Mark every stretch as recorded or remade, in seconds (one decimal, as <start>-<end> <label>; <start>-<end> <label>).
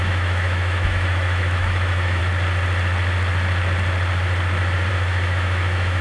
0.0-2.2 remade; 2.2-4.9 recorded; 4.9-6.0 remade